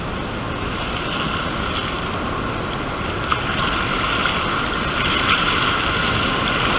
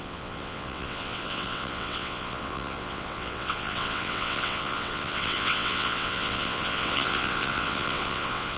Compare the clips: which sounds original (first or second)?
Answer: first